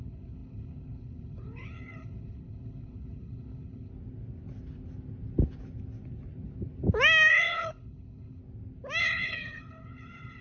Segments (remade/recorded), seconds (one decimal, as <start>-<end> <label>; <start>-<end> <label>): 0.0-3.9 remade; 3.9-7.3 recorded; 7.3-8.4 remade; 8.4-9.0 recorded; 9.0-10.4 remade